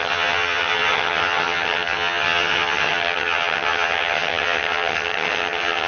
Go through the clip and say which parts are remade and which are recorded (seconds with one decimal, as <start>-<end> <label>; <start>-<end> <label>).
0.0-5.9 remade